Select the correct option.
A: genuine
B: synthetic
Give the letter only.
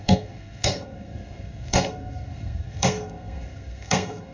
B